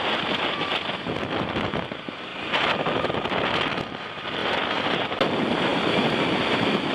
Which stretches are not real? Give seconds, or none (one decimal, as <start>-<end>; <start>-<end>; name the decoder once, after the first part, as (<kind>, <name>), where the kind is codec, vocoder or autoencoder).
none